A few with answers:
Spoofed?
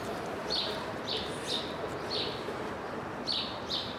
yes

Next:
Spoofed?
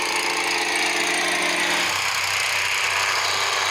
no